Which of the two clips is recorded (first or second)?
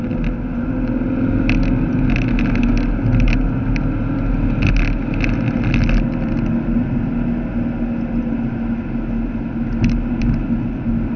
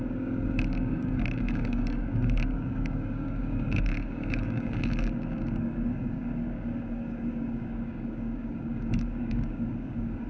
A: first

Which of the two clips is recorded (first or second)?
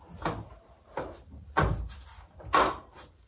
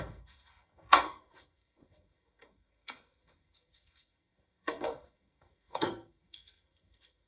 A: first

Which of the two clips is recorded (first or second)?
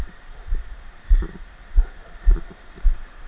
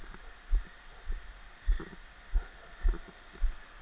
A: second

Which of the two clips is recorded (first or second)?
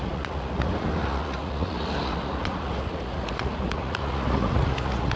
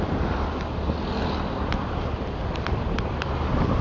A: second